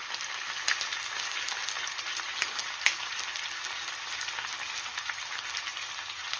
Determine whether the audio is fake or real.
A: real